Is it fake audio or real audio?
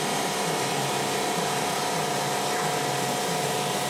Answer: real